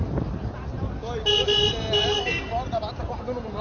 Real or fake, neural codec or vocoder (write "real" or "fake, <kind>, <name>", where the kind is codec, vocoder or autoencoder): real